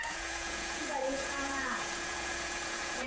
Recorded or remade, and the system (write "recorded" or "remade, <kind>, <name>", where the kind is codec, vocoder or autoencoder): remade, vocoder, Vocos